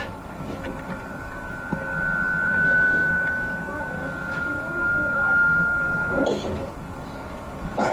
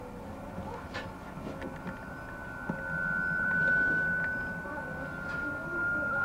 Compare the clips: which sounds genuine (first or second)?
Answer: second